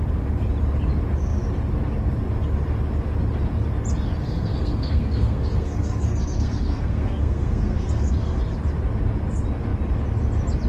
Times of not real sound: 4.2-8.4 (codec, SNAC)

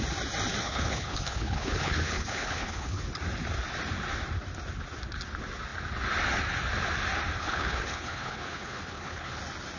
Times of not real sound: 0.6-3.0 (codec, HILCodec); 7.4-9.4

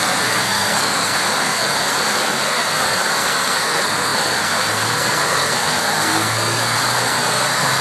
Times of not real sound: 0.0-7.8 (codec, SNAC)

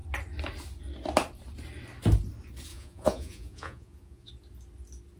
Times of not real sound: 2.7-4.3 (vocoder, Vocos)

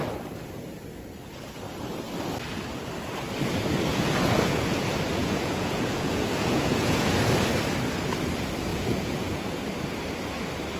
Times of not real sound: 3.9-4.8 (vocoder, Vocos); 5.2-7.1; 8.7-9.6